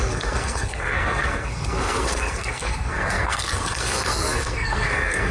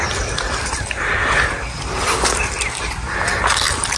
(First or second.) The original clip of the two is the second